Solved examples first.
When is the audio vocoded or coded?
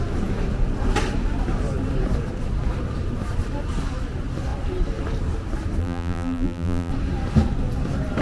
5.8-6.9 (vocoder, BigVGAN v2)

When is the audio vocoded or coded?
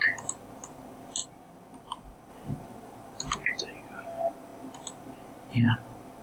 none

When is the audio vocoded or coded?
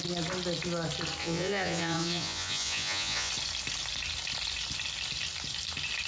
1.2-3.3 (vocoder, Vocos)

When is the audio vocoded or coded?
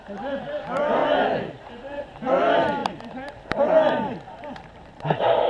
0.0-1.0 (vocoder, BigVGAN v2); 1.7-5.5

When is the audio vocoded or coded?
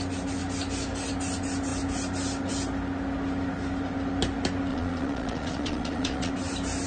4.7-6.3 (vocoder, Vocos)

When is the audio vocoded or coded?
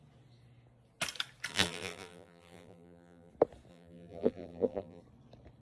1.5-3.3 (vocoder, BigVGAN v2); 3.7-5.0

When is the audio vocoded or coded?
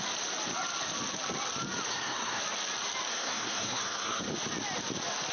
1.9-2.4 (codec, SNAC); 3.1-4.2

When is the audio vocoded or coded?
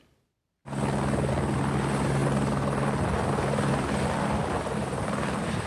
4.8-5.7 (vocoder, BigVGAN v2)